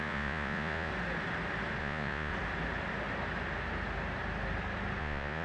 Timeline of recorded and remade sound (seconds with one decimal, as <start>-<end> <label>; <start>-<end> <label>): 0.0-0.9 remade; 0.9-1.8 recorded; 1.8-2.3 remade; 2.3-5.0 recorded; 5.0-5.4 remade